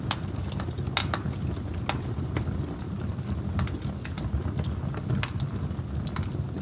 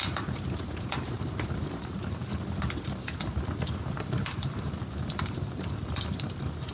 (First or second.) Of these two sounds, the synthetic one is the second